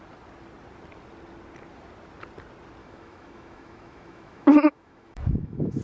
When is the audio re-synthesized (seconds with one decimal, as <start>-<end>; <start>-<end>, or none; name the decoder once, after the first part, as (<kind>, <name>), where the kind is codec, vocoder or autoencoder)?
2.8-5.8 (autoencoder, DAC-VAE)